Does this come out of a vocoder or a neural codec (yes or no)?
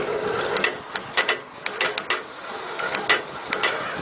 no